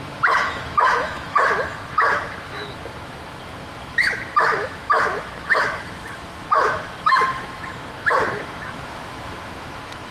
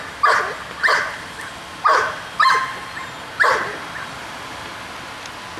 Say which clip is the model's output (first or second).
first